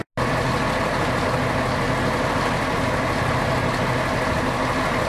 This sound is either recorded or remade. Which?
recorded